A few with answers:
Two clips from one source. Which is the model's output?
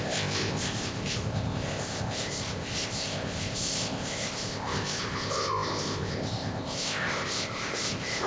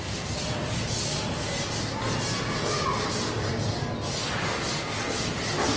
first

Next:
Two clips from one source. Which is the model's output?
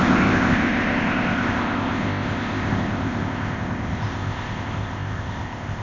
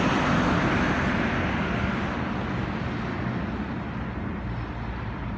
first